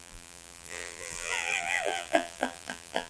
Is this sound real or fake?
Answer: fake